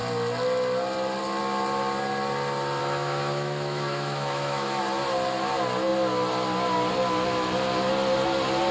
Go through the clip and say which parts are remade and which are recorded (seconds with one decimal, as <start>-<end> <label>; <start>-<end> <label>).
0.0-2.8 recorded; 2.8-4.8 remade; 4.8-8.7 recorded